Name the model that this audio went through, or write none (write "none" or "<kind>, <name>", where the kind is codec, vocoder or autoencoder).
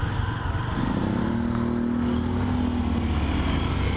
none